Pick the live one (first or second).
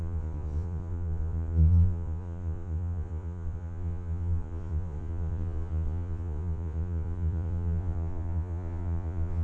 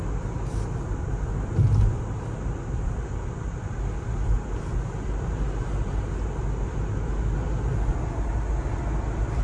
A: second